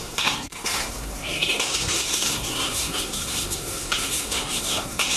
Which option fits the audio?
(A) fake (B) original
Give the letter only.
A